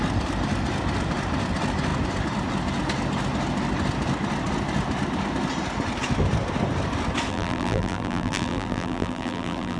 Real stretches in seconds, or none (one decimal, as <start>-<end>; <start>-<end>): 0.0-7.3